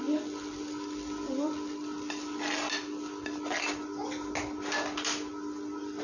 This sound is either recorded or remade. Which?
recorded